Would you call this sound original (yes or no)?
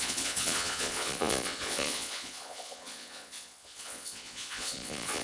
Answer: no